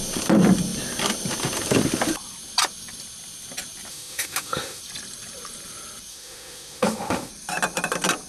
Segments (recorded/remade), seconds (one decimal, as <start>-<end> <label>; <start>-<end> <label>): 0.0-3.9 recorded; 3.9-4.8 remade; 4.8-6.1 recorded; 6.1-7.3 remade; 7.3-8.3 recorded